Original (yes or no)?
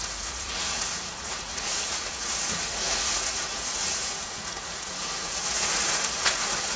no